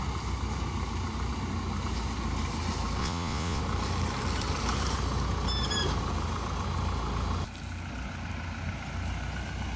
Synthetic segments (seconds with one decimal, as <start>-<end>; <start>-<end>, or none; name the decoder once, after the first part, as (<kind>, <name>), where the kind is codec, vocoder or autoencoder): 3.0-3.6 (vocoder, Vocos)